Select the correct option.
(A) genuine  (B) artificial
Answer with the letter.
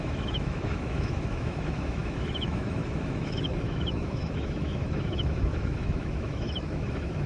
B